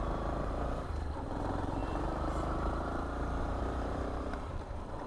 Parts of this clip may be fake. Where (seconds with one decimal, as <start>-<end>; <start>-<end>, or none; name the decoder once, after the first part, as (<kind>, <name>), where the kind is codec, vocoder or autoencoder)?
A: 0.0-1.8 (vocoder, BigVGAN v2); 3.4-5.1